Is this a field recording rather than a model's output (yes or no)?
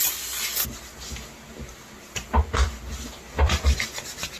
yes